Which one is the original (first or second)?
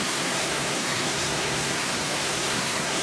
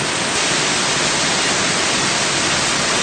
second